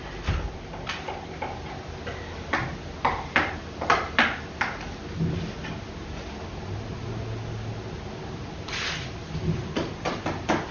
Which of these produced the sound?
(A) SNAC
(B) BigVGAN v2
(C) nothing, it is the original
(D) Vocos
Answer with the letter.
C